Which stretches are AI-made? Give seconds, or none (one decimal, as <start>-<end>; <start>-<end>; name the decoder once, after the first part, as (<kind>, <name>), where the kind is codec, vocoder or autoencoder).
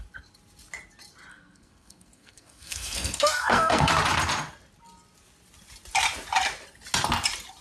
1.3-3.9 (codec, SNAC)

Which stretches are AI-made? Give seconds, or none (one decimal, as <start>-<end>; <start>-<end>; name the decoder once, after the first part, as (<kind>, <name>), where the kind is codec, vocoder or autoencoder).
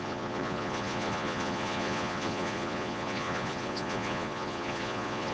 0.0-5.3 (vocoder, Vocos)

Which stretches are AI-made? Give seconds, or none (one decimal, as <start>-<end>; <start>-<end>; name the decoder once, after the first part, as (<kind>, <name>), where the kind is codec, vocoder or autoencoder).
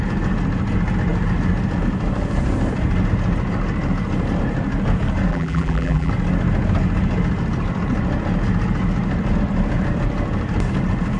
5.3-6.1 (vocoder, BigVGAN v2)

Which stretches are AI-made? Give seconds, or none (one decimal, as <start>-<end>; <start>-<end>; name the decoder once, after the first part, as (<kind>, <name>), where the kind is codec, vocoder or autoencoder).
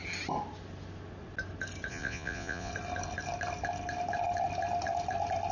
1.9-2.7 (vocoder, Vocos)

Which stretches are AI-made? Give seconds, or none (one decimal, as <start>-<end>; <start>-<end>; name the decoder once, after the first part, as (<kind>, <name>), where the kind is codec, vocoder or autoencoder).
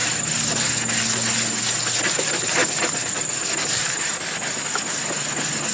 0.0-0.6 (vocoder, BigVGAN v2); 2.6-5.1